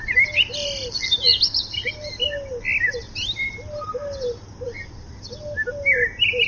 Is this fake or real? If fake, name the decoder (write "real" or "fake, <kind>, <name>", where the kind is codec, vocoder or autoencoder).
real